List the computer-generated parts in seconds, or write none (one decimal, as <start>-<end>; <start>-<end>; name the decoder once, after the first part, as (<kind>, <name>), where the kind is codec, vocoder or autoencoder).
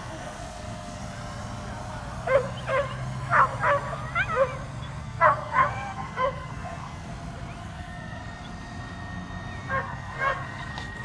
0.0-1.0 (codec, SNAC); 5.0-7.1; 7.6-8.2; 9.7-11.0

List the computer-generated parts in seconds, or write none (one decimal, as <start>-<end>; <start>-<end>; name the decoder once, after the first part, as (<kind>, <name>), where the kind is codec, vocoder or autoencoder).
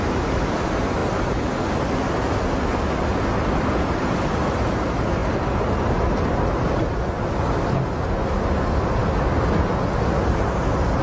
none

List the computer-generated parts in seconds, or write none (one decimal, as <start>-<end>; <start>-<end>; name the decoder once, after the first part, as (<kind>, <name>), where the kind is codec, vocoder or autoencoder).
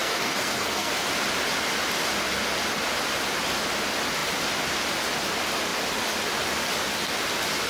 0.0-0.9 (codec, SNAC)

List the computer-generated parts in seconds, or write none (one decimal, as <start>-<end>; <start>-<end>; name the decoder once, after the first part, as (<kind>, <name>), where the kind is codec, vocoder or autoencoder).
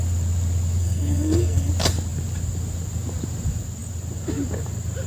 0.8-1.7 (codec, SNAC)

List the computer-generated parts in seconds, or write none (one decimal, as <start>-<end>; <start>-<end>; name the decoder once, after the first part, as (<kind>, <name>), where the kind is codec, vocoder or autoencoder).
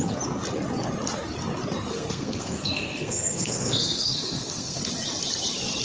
1.9-4.8 (codec, SNAC)